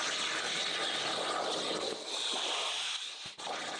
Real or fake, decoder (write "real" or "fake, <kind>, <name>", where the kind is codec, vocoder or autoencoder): real